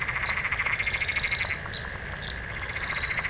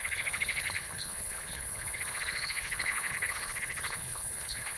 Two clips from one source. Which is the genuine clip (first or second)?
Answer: first